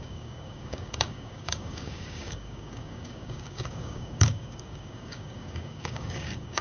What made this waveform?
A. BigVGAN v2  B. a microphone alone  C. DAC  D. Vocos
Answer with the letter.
C